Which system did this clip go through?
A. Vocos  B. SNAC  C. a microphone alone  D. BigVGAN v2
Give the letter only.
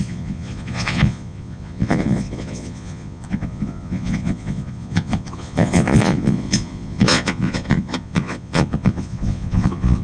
A